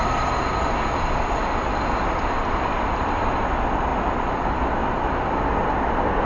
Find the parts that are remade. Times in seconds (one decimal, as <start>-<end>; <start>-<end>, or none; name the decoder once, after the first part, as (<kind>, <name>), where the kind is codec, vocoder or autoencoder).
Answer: none